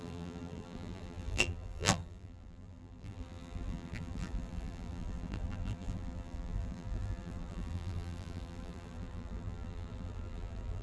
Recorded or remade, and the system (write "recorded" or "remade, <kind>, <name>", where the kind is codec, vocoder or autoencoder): remade, vocoder, BigVGAN v2